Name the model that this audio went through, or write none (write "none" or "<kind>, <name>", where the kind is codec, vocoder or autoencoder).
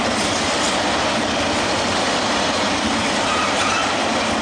none